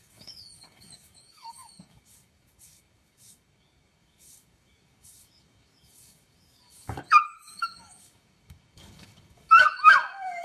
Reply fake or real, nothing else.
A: fake